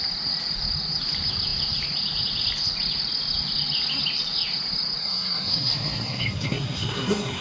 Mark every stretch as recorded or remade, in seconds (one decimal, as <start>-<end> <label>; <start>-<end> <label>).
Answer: 0.0-5.0 recorded; 5.0-7.4 remade